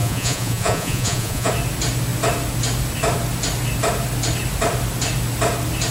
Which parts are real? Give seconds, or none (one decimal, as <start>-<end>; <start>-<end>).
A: 1.5-5.9